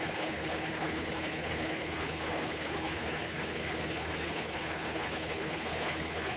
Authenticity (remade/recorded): remade